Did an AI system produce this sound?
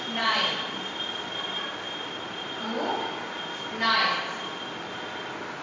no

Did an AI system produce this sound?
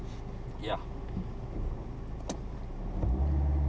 no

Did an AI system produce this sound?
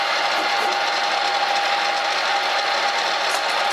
no